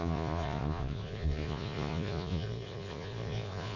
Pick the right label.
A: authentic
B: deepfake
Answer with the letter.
B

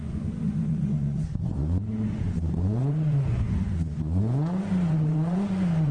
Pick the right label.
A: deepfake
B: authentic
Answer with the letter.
A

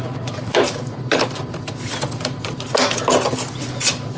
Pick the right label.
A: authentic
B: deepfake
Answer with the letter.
A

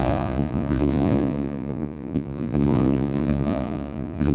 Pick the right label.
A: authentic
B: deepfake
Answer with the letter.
B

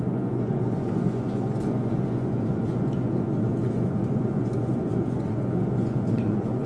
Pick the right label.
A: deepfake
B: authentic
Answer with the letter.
A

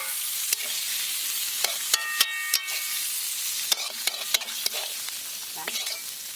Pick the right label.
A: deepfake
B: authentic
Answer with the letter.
B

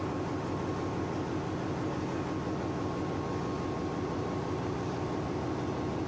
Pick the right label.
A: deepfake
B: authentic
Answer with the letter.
B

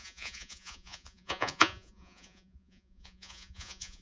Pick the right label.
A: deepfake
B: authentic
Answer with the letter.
A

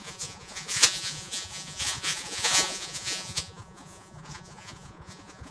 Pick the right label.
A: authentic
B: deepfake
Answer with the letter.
B